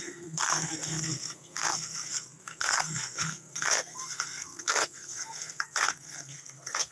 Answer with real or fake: fake